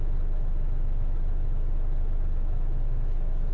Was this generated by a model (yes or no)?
no